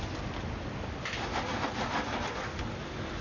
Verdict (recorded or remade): recorded